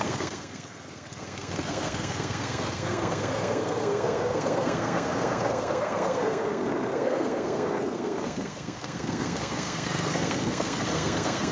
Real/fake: fake